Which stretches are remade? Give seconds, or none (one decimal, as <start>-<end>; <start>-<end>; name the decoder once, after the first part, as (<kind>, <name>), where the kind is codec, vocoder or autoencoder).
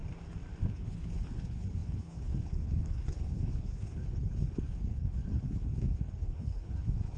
0.6-7.2 (codec, HILCodec)